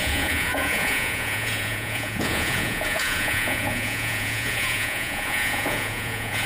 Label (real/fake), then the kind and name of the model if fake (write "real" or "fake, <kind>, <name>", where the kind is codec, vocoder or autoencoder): fake, vocoder, Vocos